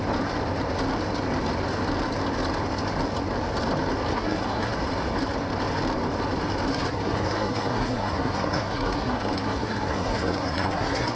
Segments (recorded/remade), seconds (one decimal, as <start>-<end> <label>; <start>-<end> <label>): 0.0-4.1 recorded; 4.1-4.7 remade; 4.7-6.7 recorded; 6.7-11.2 remade